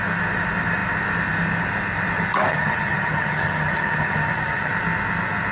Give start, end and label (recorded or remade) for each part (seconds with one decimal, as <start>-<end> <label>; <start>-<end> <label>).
0.0-2.5 recorded; 2.5-4.7 remade; 4.7-5.5 recorded